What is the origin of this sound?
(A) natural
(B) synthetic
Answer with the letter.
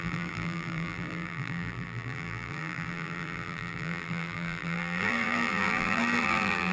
B